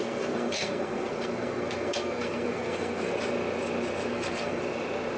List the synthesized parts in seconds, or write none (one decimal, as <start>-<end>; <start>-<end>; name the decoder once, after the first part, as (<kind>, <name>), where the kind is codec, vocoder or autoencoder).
0.0-3.1 (codec, SNAC); 4.1-4.6